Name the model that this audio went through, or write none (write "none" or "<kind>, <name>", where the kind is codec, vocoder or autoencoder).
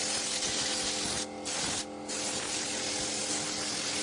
none